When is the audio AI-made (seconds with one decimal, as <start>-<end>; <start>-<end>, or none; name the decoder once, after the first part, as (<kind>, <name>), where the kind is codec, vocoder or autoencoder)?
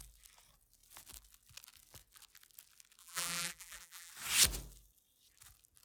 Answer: 3.0-4.1 (vocoder, BigVGAN v2)